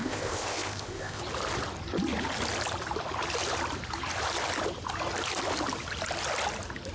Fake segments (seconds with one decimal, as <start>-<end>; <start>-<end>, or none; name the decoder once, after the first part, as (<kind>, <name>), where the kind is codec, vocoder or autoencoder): 0.0-1.2 (codec, ZipCodec)